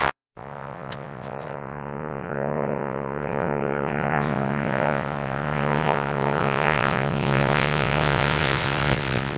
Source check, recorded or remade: remade